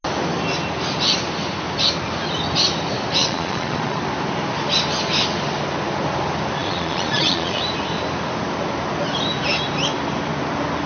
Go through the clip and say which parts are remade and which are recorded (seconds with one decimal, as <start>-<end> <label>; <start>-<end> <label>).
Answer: 0.0-3.2 recorded; 3.2-4.0 remade; 4.0-6.6 recorded; 6.6-7.6 remade; 7.6-10.9 recorded